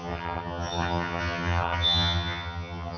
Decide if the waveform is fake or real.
fake